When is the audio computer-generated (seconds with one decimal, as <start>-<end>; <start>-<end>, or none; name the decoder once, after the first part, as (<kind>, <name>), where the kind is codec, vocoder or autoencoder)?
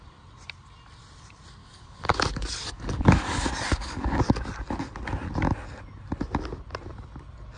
1.6-4.2 (codec, DAC)